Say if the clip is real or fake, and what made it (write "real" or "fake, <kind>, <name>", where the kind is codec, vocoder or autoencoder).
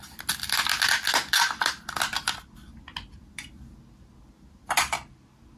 real